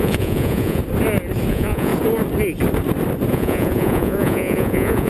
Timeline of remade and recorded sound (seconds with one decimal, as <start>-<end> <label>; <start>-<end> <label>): 0.0-0.8 remade; 0.8-1.5 recorded; 1.5-1.9 remade; 1.9-3.3 recorded; 3.3-5.1 remade